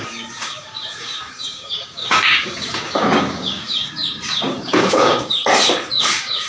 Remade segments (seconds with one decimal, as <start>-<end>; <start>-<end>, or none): 0.0-5.4; 6.1-6.5